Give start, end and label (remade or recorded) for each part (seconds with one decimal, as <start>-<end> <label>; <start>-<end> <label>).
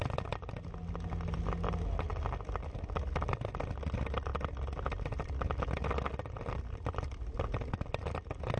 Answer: 0.0-8.6 recorded